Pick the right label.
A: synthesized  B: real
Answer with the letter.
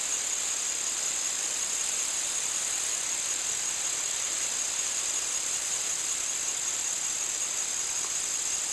B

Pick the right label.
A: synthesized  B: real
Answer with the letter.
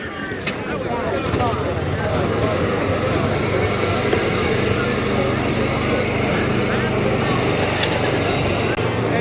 B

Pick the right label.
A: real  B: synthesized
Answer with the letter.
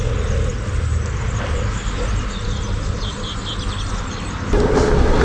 A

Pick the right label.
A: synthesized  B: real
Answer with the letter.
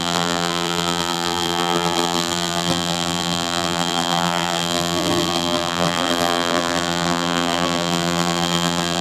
A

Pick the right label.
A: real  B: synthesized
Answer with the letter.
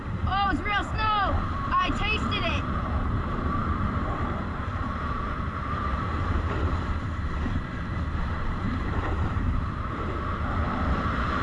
B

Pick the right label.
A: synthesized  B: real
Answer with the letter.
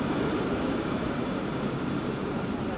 A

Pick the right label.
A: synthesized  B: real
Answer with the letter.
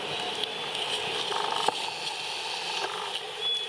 B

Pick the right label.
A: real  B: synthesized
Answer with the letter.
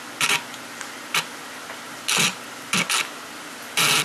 B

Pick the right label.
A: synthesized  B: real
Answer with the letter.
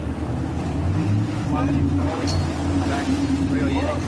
A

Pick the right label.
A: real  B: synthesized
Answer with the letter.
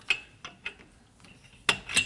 A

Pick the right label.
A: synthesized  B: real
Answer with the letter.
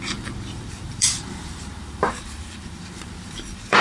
A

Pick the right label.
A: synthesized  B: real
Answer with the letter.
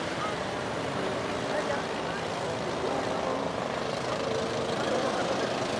A